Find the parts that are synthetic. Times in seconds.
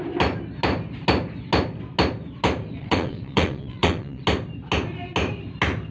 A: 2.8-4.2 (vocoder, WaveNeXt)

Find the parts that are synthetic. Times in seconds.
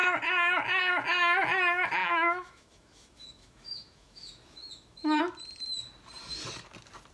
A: 2.0-5.2 (autoencoder, DAC-VAE)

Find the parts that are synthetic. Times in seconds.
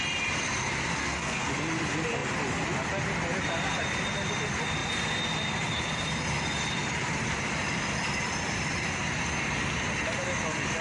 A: 1.0-1.5 (codec, SNAC)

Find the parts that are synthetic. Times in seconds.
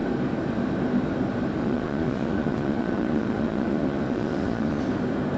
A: 1.6-4.8 (vocoder, Vocos)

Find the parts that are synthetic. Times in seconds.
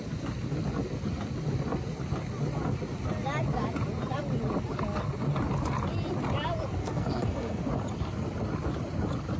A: 6.8-7.6 (codec, SNAC)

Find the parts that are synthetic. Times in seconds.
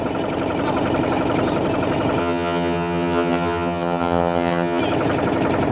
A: 2.2-4.8 (vocoder, HiFi-GAN)